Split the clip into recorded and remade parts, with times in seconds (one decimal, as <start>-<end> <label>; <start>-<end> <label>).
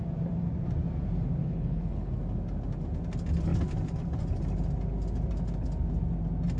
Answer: 0.0-1.4 recorded; 1.4-2.1 remade; 2.1-6.6 recorded